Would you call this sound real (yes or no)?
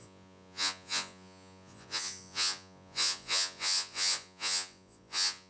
no